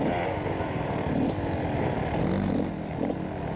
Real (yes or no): yes